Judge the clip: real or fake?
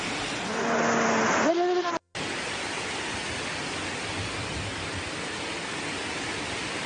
real